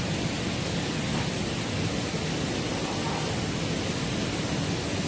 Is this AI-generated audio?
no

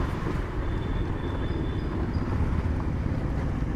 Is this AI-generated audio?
no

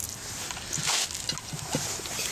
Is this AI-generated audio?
no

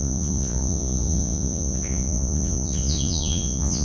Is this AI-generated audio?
yes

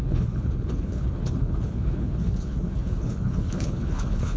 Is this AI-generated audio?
yes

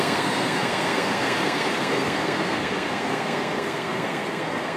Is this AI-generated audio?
yes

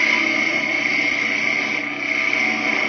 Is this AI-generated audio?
no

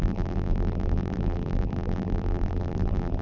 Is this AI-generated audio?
yes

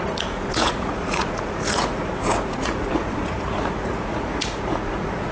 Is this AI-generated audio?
yes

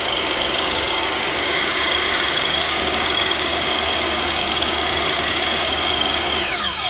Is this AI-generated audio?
yes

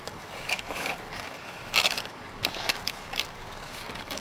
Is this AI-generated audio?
yes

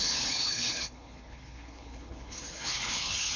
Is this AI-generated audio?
yes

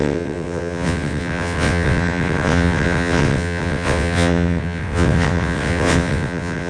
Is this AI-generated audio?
yes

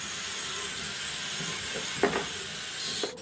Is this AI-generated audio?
no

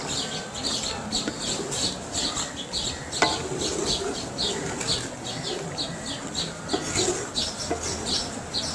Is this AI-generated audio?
no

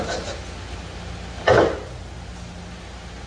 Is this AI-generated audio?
no